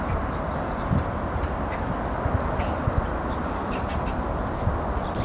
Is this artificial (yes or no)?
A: no